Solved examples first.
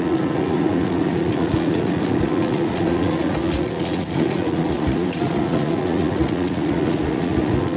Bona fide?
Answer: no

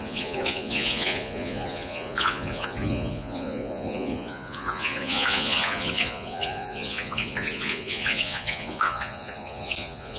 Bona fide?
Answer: no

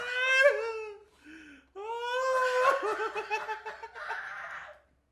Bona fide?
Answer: yes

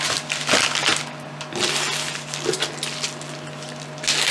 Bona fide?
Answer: yes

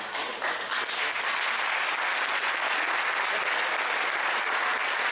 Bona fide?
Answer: yes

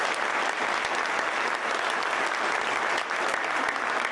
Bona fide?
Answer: yes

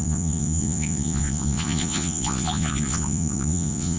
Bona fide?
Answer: no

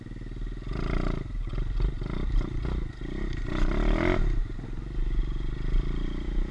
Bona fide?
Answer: yes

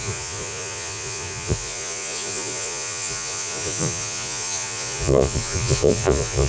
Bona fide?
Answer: no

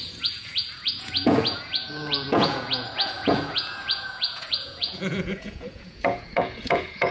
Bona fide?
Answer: no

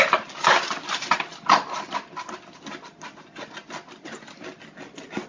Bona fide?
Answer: yes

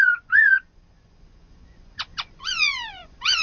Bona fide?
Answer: no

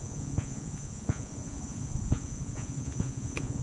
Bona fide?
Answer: no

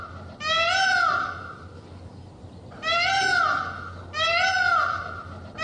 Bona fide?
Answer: yes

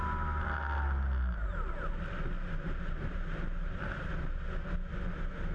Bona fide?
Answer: yes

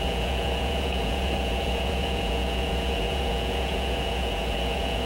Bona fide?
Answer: no